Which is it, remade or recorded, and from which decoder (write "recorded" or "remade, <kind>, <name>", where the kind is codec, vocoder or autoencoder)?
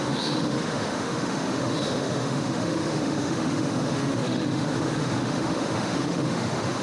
remade, autoencoder, DAC-VAE